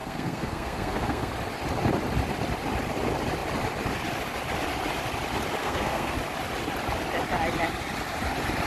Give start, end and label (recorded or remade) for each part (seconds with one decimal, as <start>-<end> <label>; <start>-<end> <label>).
0.0-1.3 remade; 1.3-5.6 recorded; 5.6-6.2 remade; 6.2-8.7 recorded